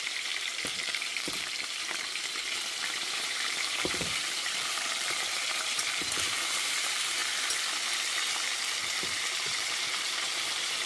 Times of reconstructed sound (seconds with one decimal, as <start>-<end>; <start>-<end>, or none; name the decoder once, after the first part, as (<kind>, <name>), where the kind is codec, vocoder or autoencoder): 0.0-7.2 (vocoder, BigVGAN v2); 8.8-10.9